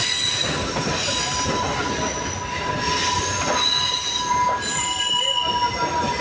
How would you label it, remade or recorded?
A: recorded